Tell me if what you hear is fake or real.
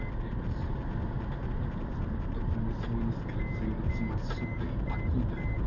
real